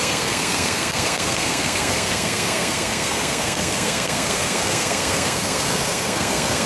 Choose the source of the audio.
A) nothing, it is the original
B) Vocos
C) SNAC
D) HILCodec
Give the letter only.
C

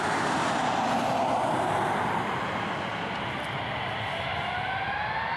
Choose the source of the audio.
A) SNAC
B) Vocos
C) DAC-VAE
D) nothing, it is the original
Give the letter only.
D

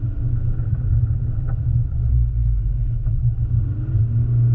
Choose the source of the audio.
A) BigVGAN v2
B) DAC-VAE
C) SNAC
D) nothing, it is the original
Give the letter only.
D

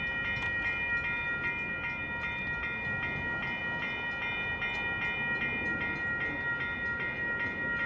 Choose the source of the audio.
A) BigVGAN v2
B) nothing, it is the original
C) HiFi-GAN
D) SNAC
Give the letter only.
B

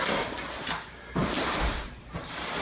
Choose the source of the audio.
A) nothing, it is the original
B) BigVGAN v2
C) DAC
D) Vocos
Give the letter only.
A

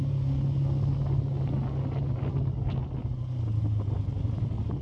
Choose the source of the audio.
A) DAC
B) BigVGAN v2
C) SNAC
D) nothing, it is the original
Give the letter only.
D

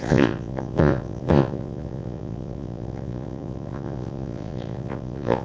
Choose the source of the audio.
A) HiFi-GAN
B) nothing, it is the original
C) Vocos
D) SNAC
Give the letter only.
C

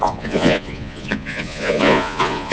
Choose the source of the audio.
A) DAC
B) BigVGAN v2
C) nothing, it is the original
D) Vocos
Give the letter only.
D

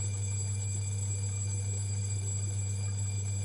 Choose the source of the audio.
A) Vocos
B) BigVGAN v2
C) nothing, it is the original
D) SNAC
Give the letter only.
C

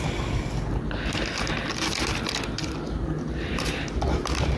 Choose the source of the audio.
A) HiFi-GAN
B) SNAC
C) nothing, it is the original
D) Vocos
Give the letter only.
C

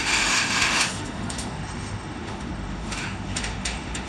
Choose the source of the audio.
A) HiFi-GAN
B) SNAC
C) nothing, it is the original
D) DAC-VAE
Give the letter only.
D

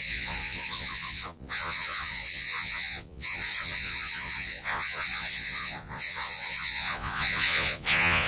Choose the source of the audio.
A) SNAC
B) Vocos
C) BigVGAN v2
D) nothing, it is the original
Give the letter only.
B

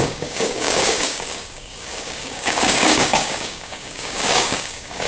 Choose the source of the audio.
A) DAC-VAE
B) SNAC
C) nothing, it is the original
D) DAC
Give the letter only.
D